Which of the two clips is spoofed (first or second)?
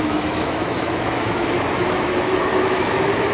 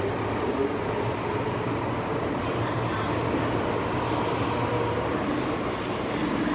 first